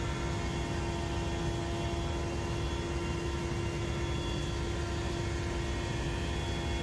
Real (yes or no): yes